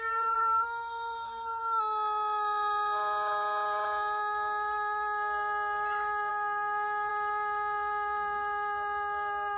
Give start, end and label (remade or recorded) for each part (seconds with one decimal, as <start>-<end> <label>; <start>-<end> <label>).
0.0-1.6 remade; 1.6-6.3 recorded; 6.3-7.1 remade; 7.1-9.6 recorded